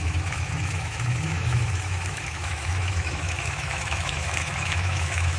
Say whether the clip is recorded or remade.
remade